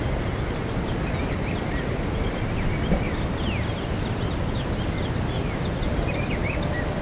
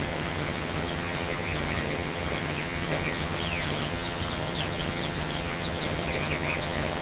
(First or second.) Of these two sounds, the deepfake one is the second